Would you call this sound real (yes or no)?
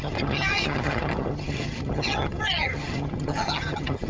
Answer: no